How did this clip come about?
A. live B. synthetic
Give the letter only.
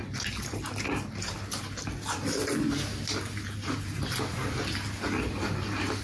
A